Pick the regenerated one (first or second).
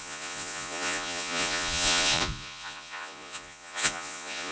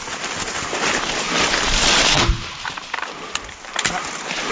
first